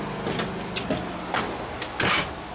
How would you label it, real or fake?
real